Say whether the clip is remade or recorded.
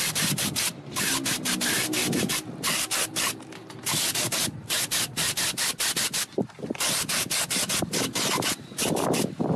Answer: recorded